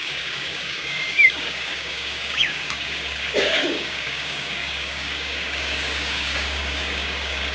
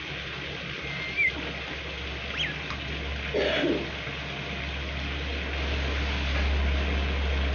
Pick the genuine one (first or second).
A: second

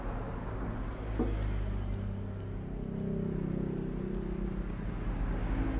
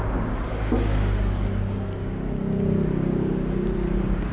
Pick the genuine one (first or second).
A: first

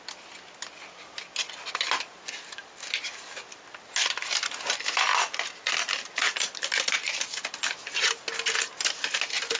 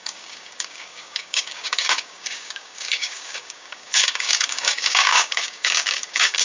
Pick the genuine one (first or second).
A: first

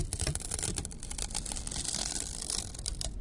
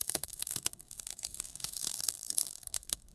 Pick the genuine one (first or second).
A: first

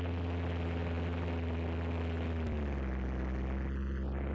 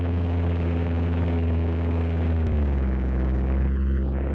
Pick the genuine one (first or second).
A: first